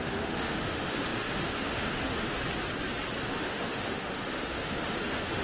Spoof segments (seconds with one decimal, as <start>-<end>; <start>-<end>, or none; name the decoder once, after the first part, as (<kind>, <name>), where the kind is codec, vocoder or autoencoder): 0.0-2.4 (autoencoder, DAC-VAE); 3.3-5.4